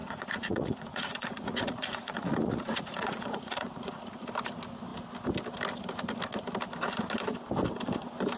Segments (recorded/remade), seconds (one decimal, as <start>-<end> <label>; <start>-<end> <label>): 0.0-4.3 remade; 4.3-8.4 recorded

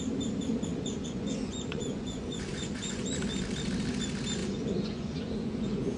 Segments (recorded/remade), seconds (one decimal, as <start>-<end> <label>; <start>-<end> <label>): 0.0-0.7 recorded; 0.7-3.1 remade; 3.1-4.4 recorded; 4.4-6.0 remade

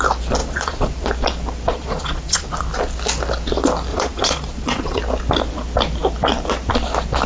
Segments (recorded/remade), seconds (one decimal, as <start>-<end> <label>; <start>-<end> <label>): 0.0-0.4 recorded; 0.4-1.1 remade; 1.1-1.7 recorded; 1.7-2.5 remade; 2.5-3.9 recorded; 3.9-5.0 remade; 5.0-7.3 recorded

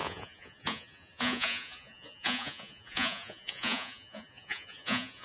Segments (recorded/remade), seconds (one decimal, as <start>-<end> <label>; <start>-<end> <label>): 0.0-5.2 remade

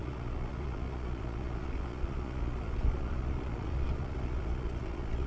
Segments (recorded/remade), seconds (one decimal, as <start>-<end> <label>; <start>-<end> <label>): 0.0-5.3 remade

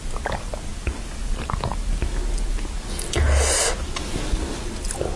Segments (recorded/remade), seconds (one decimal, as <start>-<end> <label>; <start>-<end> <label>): 0.0-5.2 recorded